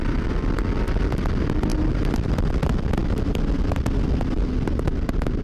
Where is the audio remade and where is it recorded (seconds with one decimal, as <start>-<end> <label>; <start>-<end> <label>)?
0.0-1.7 recorded; 1.7-2.5 remade; 2.5-5.4 recorded